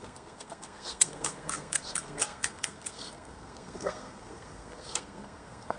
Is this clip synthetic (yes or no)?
yes